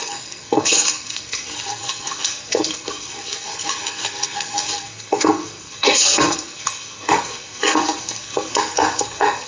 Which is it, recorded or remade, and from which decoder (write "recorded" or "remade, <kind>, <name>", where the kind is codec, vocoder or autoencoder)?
remade, codec, SNAC